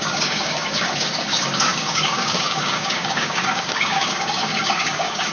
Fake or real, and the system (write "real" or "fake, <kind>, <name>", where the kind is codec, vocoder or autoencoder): fake, codec, DAC